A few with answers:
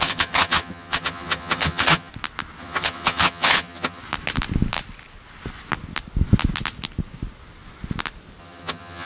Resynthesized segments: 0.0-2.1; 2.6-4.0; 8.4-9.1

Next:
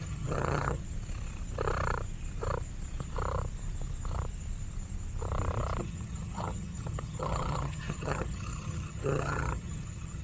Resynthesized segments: 0.0-0.8; 5.8-10.2

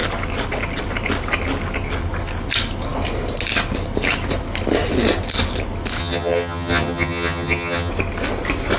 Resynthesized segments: 6.0-7.9

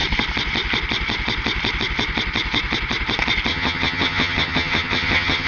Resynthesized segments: 3.5-5.5

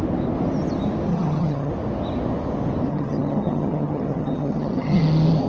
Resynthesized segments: 1.1-1.7; 2.9-5.0

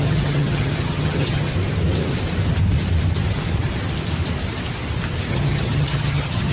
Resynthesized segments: 0.0-1.5; 5.3-6.5

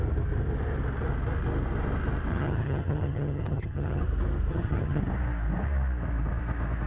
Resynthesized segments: 2.3-4.0; 4.5-5.0